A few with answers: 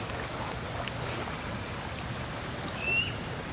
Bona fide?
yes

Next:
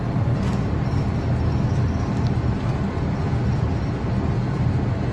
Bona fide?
yes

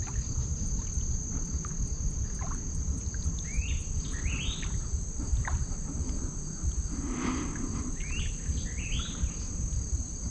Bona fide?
yes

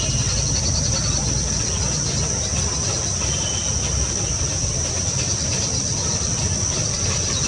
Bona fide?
yes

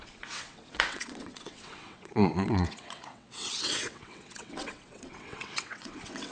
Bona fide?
no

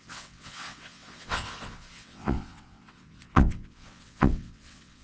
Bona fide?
no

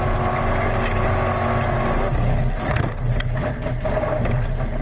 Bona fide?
yes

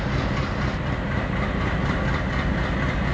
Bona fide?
yes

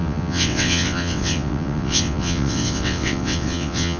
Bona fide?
no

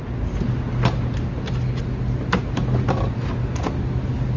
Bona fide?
yes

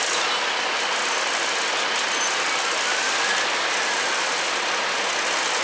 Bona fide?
yes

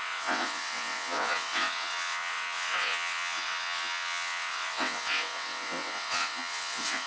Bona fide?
no